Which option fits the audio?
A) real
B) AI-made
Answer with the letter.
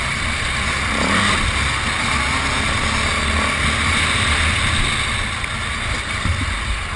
A